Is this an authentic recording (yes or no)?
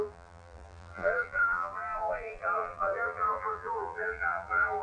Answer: no